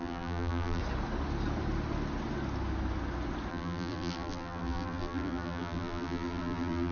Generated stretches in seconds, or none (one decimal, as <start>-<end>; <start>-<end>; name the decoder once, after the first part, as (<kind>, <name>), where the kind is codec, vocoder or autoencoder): 0.0-0.8 (vocoder, BigVGAN v2); 3.5-6.9